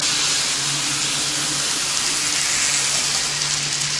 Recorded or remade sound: recorded